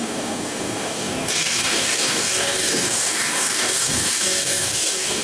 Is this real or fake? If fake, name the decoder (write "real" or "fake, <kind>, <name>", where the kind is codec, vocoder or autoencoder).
fake, codec, DAC